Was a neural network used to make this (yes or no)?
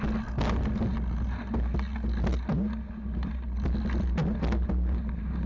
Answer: no